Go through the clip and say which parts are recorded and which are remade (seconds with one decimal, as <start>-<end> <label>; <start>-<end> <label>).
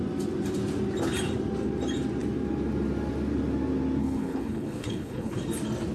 0.0-4.0 recorded; 4.0-5.4 remade; 5.4-5.9 recorded